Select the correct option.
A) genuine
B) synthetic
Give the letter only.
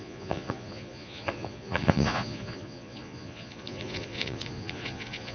B